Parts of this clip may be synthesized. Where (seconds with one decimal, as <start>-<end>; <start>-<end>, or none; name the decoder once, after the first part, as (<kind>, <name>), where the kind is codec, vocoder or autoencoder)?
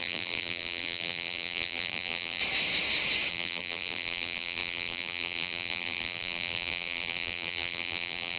0.0-2.4 (vocoder, BigVGAN v2); 3.3-8.4